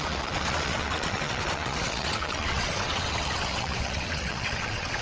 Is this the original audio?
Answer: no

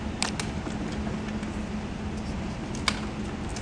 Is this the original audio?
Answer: yes